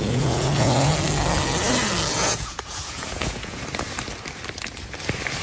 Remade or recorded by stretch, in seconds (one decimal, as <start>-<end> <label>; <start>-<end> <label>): 0.0-0.9 remade; 0.9-2.1 recorded; 2.1-3.6 remade; 3.6-5.4 recorded